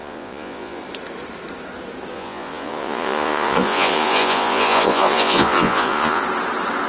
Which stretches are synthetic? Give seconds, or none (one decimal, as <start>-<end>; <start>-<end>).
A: 0.0-0.8; 2.1-6.2